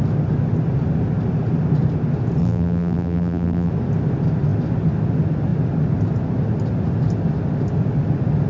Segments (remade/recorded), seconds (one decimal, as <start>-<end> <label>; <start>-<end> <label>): 0.0-2.4 recorded; 2.4-3.7 remade; 3.7-8.5 recorded